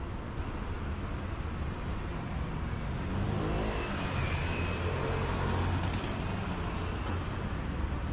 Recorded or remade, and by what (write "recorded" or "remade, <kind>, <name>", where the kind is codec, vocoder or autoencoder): recorded